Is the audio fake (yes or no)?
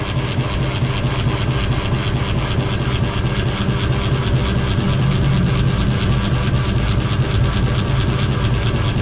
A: no